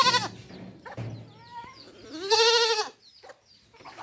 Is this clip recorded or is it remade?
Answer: recorded